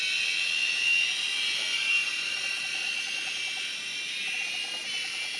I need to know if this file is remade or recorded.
recorded